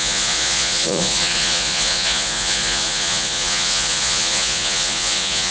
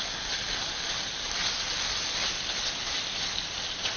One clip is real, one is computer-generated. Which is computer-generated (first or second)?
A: first